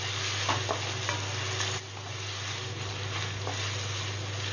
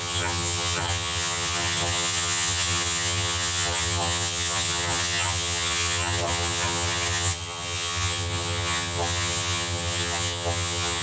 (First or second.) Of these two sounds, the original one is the first